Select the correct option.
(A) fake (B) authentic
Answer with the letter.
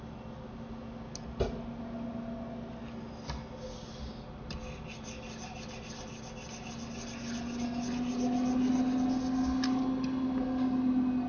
B